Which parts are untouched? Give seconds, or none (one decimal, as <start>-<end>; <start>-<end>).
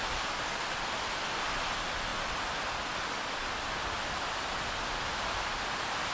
0.0-6.1